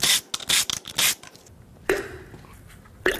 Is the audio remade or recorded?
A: recorded